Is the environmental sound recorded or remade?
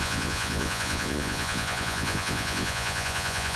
remade